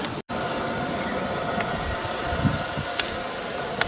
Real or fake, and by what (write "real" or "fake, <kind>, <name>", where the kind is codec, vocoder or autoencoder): real